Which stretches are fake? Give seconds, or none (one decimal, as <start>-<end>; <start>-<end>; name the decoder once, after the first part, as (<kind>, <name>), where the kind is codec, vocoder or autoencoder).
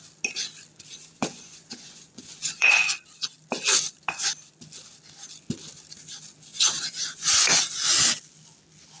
0.9-2.7 (vocoder, Vocos); 6.5-7.6